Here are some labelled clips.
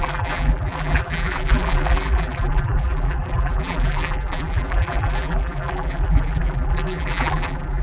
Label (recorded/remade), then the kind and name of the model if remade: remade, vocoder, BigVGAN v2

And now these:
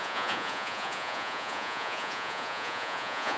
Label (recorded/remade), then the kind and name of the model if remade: remade, vocoder, Vocos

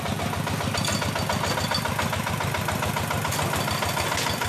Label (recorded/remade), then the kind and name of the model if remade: recorded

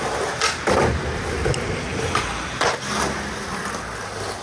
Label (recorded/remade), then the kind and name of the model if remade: recorded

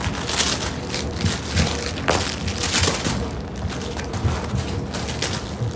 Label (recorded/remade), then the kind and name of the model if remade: recorded